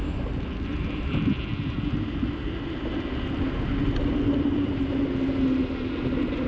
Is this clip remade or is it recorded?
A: recorded